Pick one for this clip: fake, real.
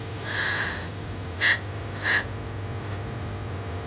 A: real